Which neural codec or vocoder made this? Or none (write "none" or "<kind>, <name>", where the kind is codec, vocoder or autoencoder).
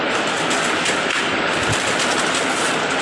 none